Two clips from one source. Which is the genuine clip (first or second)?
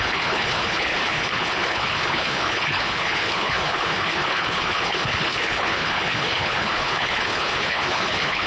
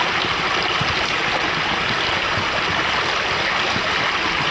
second